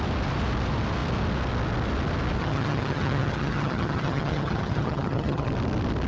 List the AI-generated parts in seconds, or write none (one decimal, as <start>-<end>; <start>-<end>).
2.4-5.5